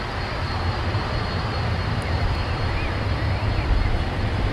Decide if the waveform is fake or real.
real